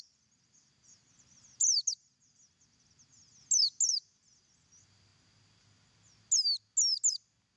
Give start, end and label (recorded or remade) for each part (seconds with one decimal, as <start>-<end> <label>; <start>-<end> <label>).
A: 0.0-7.6 recorded